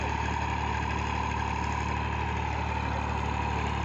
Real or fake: real